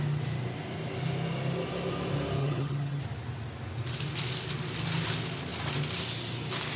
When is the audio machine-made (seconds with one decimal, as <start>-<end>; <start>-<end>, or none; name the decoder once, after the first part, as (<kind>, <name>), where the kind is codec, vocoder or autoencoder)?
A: 2.4-3.0 (vocoder, HiFi-GAN)